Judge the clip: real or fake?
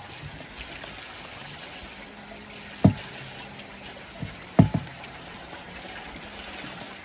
real